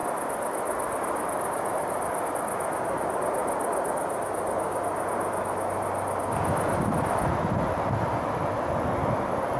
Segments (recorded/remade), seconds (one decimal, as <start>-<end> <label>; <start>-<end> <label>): 0.0-9.6 recorded